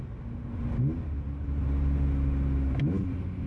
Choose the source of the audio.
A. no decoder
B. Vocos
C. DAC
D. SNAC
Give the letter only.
A